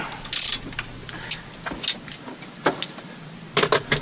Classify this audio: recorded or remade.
recorded